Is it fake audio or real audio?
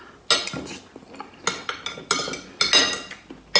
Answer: real